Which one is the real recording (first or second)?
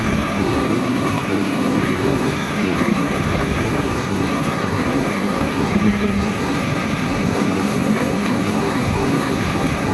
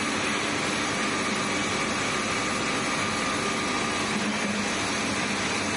second